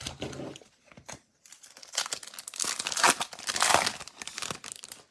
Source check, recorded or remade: recorded